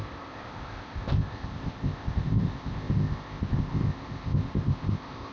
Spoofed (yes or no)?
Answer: yes